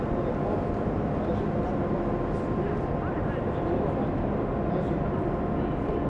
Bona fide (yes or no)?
yes